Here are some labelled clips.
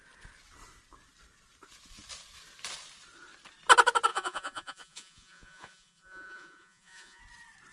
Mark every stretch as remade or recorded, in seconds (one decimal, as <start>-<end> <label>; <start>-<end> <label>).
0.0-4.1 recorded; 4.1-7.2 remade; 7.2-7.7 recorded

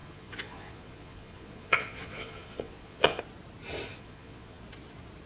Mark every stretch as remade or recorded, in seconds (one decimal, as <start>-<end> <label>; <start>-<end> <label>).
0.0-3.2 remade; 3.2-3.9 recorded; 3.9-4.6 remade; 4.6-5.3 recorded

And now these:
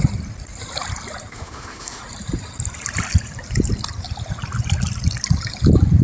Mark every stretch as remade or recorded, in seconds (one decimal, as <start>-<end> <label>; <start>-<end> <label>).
0.0-1.3 recorded; 1.3-2.0 remade; 2.0-6.0 recorded